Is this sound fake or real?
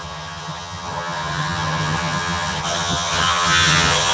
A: fake